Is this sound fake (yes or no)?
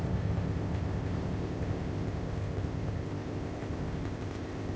yes